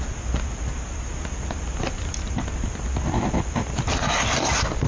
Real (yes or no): yes